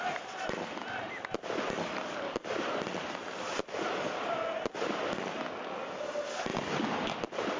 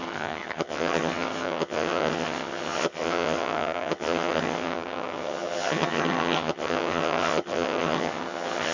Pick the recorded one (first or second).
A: first